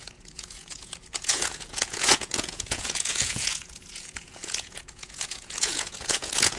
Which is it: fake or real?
fake